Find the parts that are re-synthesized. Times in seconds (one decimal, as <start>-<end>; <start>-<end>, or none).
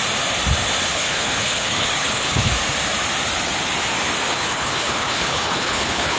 0.9-2.5; 4.3-6.2